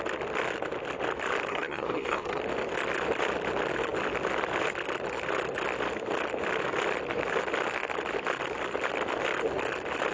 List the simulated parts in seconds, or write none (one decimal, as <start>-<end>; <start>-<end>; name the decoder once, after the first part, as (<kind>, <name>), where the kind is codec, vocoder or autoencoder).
1.5-2.4 (codec, SNAC)